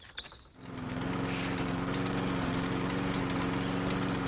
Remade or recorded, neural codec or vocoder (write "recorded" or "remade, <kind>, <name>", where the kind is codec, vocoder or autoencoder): recorded